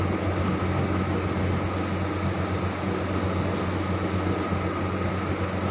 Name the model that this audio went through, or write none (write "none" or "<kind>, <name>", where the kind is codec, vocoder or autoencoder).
none